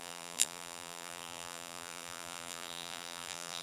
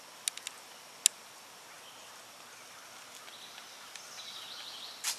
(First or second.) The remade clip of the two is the first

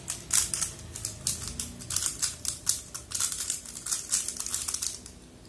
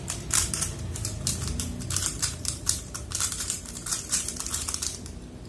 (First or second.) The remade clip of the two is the second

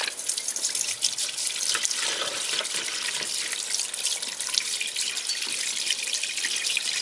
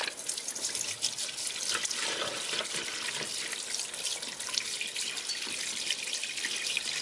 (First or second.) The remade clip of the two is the first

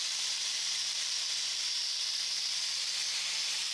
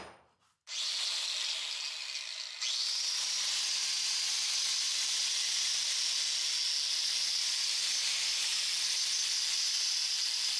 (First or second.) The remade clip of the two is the first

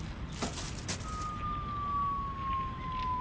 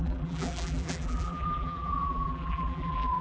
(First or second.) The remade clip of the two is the second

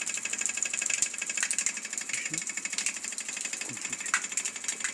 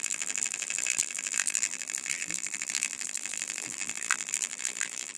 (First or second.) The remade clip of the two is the second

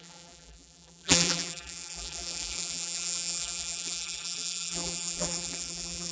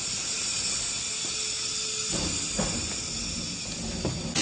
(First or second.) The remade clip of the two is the first